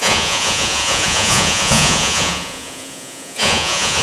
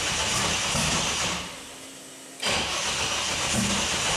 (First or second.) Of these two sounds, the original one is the second